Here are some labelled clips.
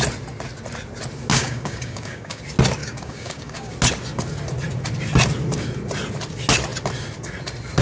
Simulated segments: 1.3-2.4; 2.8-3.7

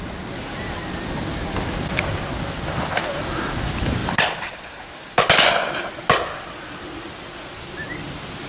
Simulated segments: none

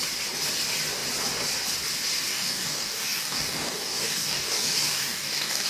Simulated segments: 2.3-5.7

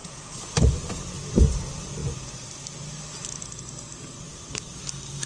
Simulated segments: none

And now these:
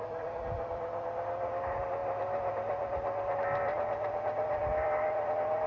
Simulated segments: none

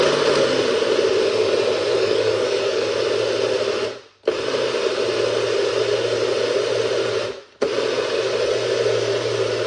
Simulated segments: 1.9-2.9

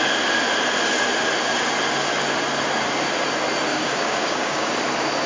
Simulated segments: 3.7-4.7

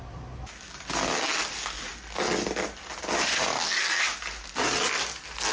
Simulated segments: none